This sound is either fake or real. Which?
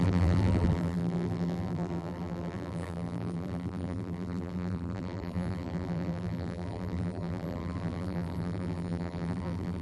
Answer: fake